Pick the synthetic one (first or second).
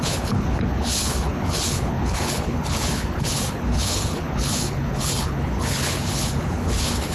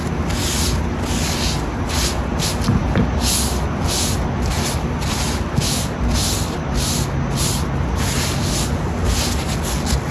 first